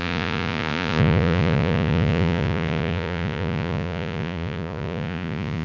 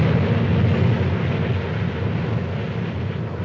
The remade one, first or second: first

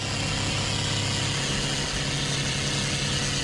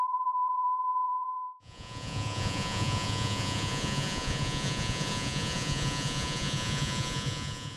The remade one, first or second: second